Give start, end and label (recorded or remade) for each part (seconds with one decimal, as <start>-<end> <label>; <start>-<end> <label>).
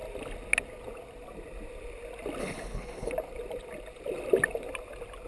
0.0-2.4 recorded; 2.4-3.1 remade; 3.1-5.3 recorded